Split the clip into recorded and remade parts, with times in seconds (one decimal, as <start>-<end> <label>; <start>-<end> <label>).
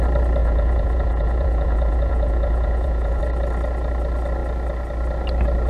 0.0-0.4 recorded; 0.4-3.2 remade; 3.2-5.7 recorded